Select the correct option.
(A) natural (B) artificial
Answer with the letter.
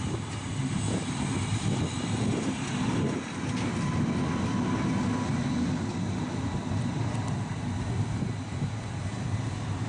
A